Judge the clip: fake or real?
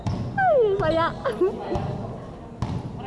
real